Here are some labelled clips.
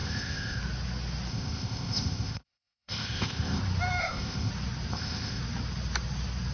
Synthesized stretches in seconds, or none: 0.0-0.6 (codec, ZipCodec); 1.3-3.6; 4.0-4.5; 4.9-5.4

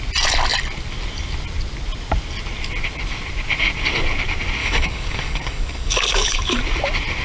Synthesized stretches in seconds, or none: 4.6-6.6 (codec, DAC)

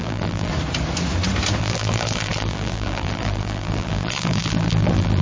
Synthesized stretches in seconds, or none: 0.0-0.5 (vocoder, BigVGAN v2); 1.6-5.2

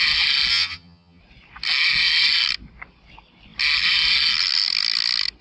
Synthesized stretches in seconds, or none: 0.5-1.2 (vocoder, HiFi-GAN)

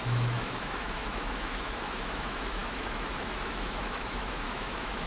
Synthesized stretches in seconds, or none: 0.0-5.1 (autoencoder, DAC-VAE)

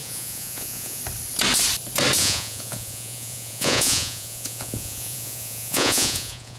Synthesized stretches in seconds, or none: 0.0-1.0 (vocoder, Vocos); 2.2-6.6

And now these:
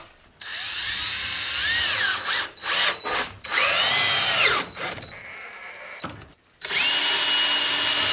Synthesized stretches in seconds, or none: none